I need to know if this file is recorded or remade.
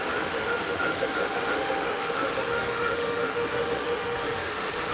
remade